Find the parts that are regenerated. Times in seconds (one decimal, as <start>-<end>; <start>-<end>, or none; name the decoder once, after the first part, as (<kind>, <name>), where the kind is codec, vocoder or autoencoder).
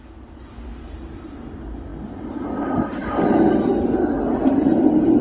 none